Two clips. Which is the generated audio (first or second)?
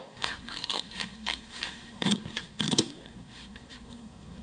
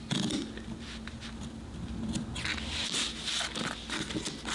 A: first